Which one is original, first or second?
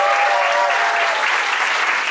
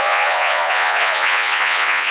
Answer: first